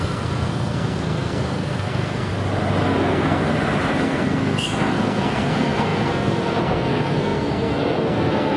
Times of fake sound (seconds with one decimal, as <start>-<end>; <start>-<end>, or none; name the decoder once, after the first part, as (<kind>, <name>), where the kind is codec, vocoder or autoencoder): 0.0-2.3 (codec, SNAC); 2.9-3.5; 4.0-8.6